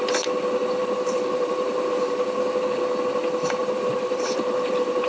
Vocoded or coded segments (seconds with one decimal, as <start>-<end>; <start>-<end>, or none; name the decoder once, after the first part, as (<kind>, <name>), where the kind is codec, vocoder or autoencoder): 0.8-2.7 (vocoder, BigVGAN v2); 3.6-5.1